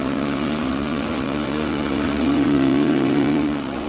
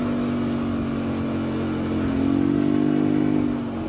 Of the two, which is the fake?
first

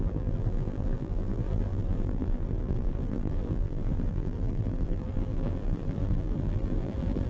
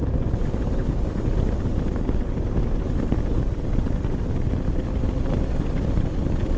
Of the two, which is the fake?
first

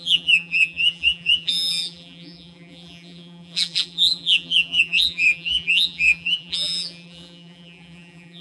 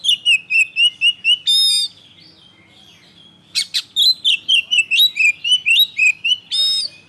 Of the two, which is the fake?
first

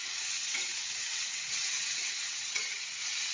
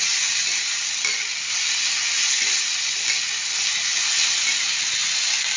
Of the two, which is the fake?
first